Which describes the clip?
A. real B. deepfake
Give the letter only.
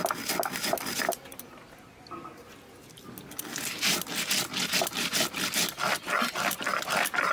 A